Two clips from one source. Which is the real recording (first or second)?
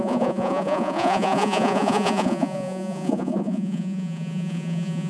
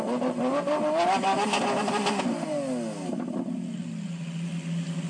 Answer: second